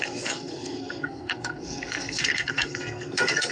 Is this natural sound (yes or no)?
no